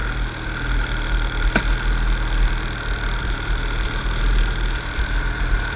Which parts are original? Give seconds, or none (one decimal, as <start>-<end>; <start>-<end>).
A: 0.0-3.2